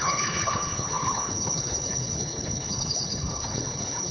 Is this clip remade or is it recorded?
remade